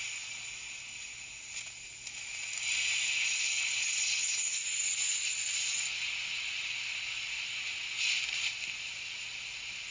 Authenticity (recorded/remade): recorded